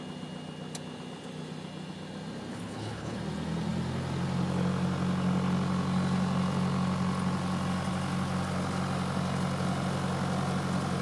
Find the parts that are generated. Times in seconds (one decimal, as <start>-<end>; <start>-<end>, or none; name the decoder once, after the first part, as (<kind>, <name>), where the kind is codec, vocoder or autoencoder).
2.5-3.2 (codec, HILCodec)